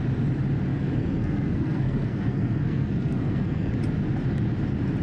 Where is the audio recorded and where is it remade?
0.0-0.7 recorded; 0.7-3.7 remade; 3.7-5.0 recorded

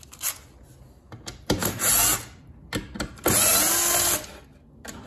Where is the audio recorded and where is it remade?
0.0-5.1 recorded

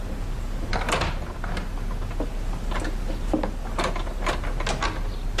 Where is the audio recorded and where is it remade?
0.0-5.4 recorded

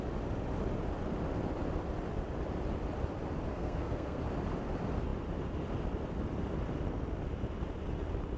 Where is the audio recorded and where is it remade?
0.0-3.5 recorded; 3.5-4.2 remade; 4.2-8.4 recorded

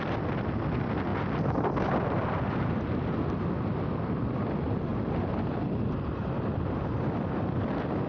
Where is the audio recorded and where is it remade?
0.0-8.1 recorded

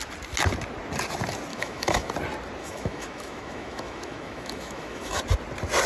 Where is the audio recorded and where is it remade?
0.0-1.5 recorded; 1.5-2.1 remade; 2.1-2.6 recorded; 2.6-5.2 remade; 5.2-5.9 recorded